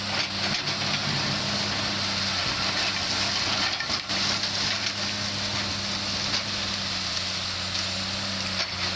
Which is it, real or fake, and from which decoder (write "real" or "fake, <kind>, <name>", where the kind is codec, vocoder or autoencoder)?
real